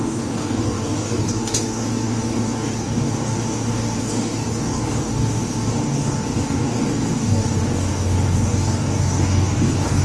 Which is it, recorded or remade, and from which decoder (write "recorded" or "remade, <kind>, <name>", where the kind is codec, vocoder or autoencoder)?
remade, codec, DAC